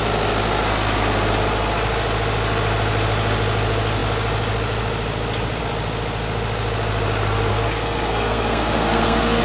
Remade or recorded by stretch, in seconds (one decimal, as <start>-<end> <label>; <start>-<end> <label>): 0.0-7.5 recorded; 7.5-9.4 remade